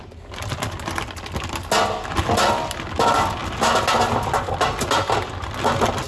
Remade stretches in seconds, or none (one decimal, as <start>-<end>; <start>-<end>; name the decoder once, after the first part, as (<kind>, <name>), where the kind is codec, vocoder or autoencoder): none